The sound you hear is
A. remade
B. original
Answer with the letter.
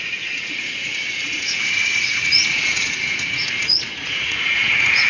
A